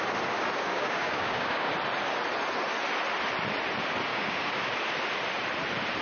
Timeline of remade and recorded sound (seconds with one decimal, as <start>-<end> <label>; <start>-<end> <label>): 0.0-0.7 recorded; 0.7-1.7 remade; 1.7-4.1 recorded; 4.1-4.7 remade; 4.7-6.0 recorded

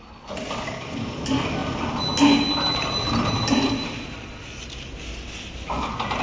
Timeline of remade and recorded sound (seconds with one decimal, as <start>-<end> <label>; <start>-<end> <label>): 0.0-6.2 recorded

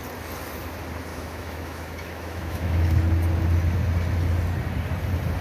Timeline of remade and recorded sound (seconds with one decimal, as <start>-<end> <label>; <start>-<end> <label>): 0.0-1.1 recorded; 1.1-3.0 remade; 3.0-5.4 recorded